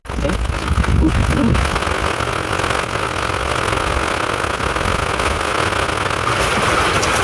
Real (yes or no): yes